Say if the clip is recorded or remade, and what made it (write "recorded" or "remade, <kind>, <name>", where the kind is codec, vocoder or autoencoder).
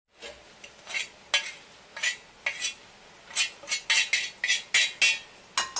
recorded